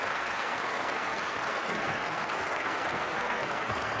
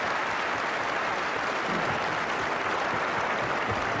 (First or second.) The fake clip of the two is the first